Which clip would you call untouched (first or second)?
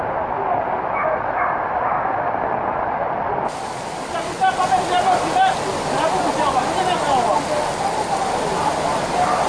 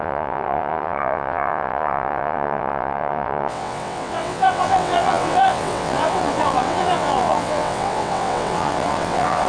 first